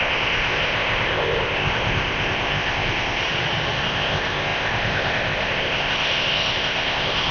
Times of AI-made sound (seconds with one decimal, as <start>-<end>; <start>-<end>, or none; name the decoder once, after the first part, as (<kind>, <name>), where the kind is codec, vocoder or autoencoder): 0.0-3.2 (codec, ZipCodec); 3.8-7.3